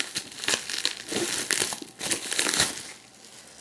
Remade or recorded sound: recorded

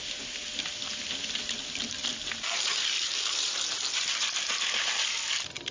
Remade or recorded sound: remade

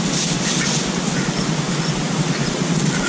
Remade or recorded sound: recorded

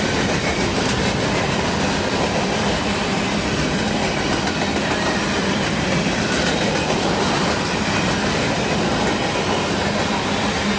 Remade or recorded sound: recorded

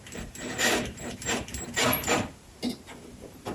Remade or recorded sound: remade